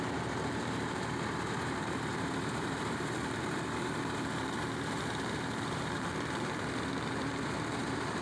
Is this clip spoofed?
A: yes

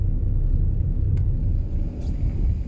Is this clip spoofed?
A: no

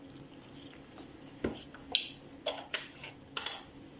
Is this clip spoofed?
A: no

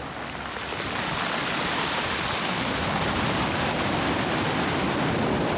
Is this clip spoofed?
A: no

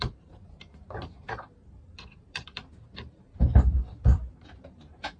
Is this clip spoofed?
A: yes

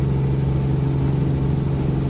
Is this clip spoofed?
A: no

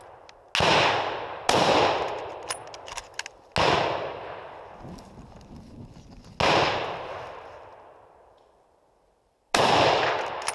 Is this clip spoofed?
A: no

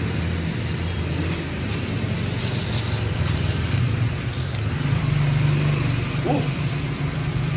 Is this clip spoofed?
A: yes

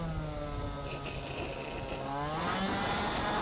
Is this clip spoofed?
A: no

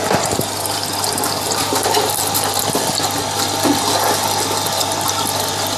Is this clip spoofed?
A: yes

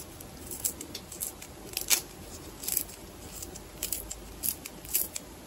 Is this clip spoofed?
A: no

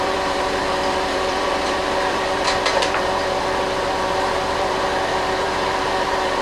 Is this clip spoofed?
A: yes